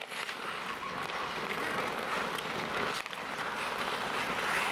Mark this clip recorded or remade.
recorded